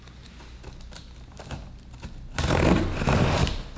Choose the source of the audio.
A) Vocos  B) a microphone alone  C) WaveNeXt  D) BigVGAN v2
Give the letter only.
B